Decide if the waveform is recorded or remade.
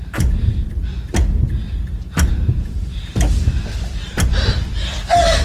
remade